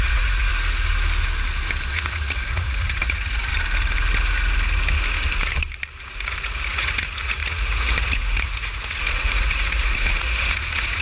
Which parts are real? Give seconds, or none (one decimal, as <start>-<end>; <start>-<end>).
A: 0.5-1.9; 3.5-6.0

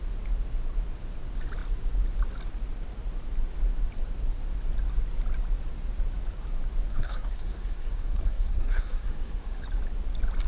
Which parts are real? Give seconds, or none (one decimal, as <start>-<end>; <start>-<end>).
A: 0.0-6.9; 9.6-10.5

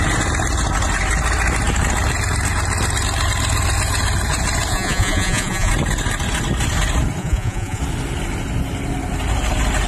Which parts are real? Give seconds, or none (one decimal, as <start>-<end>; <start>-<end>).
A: 0.0-4.7; 5.7-7.2; 7.8-9.9

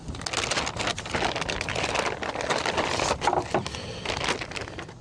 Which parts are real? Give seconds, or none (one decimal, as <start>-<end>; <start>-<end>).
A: 0.0-5.0

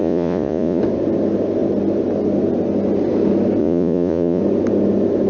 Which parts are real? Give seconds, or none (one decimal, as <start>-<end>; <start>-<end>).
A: 0.8-3.6; 4.4-5.3

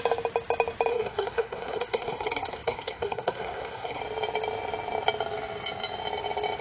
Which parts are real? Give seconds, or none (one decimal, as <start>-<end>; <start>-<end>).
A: 0.0-0.9; 4.0-6.6

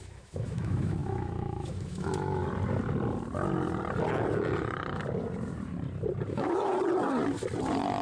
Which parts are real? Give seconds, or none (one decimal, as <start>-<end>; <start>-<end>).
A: 2.4-6.3; 6.7-8.0